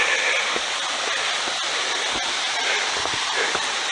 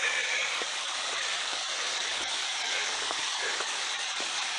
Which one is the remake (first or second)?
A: second